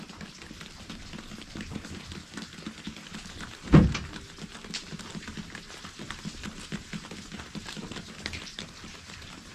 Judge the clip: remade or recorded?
recorded